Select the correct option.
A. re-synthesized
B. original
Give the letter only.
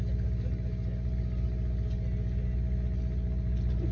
B